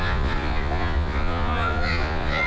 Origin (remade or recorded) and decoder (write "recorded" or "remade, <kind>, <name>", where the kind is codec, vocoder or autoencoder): remade, vocoder, Vocos